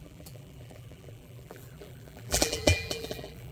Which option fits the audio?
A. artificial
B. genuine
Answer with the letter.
A